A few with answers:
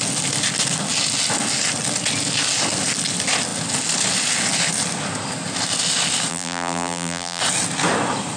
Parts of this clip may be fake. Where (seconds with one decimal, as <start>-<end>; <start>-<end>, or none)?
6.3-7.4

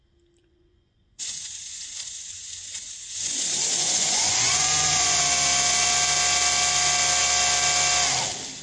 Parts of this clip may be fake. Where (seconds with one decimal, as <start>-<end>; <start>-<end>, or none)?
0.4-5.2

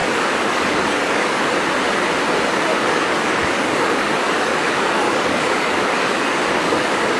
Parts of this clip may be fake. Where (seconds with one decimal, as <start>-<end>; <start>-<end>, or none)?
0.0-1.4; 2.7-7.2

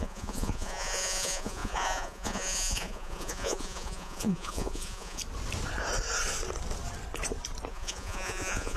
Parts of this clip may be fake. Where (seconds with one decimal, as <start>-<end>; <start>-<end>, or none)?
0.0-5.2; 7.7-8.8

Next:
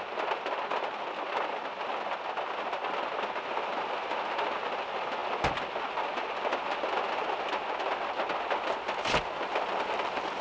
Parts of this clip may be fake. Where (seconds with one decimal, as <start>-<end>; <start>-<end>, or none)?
none

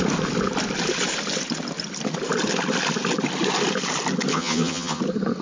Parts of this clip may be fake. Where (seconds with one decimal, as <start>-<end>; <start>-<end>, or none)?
4.3-5.0

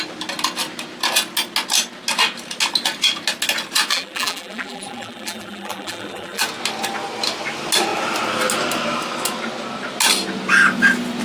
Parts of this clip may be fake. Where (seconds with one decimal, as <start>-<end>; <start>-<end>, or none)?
3.9-6.4